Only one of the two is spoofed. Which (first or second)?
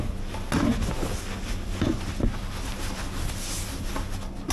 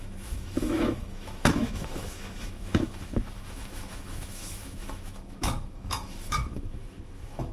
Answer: second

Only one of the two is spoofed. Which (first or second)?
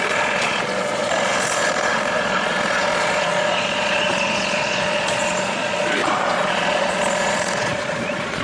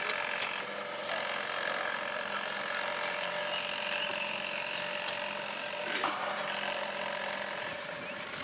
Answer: first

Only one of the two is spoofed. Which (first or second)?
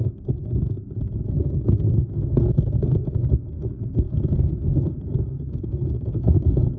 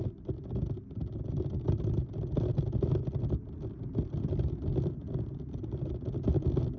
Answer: first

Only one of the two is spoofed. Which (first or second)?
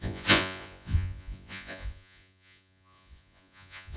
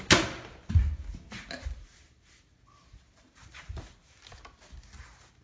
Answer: first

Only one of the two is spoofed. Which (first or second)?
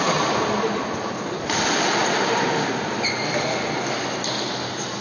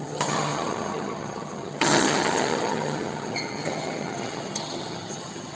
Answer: second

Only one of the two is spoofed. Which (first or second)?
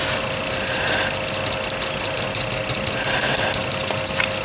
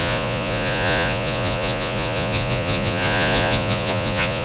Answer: second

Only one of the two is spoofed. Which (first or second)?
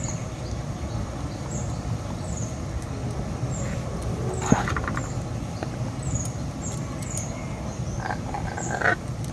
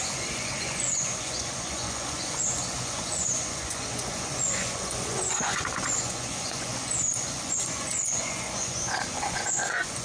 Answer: second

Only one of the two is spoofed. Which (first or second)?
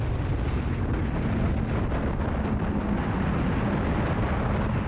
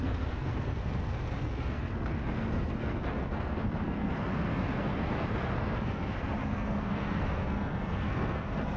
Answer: second